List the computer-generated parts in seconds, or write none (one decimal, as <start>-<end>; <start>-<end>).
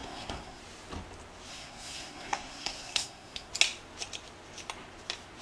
0.0-0.6; 1.5-3.5